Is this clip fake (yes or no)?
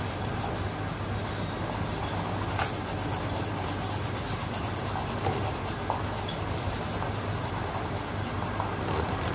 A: no